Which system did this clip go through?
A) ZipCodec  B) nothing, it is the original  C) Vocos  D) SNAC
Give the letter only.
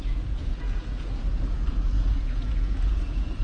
C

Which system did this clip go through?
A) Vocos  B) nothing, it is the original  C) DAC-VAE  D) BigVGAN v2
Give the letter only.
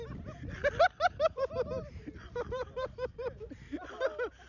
B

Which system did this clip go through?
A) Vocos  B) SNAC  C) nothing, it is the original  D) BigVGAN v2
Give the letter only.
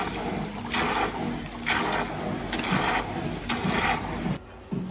C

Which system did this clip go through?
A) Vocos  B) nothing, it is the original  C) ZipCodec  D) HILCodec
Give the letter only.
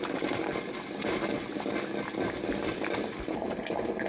B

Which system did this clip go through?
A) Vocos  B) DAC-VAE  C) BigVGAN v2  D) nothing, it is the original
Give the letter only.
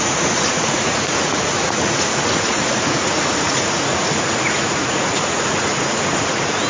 A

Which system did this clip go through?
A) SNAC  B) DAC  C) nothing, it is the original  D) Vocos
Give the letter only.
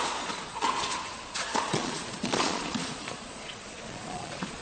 D